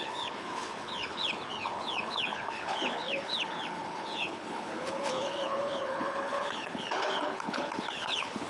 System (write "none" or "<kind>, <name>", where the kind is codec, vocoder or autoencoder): codec, HILCodec